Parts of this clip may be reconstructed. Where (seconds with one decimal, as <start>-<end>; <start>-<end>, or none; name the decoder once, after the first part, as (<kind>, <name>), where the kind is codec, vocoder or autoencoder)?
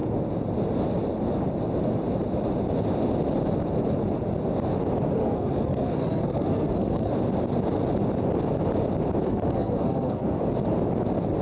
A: 5.2-7.1 (codec, SNAC); 9.2-10.4